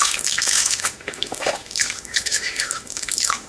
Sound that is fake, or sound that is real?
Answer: fake